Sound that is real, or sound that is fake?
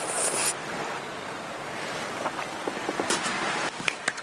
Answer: real